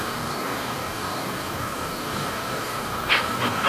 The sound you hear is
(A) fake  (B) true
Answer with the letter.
A